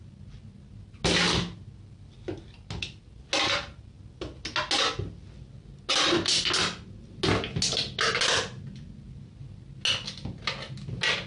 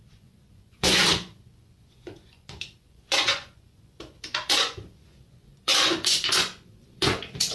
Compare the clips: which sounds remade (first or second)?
second